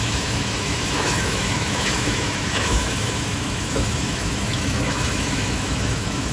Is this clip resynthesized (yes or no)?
yes